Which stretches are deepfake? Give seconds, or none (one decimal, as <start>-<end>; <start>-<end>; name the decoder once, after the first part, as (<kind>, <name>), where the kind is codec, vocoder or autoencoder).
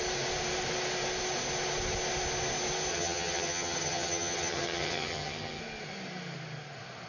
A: 2.9-5.6 (vocoder, HiFi-GAN)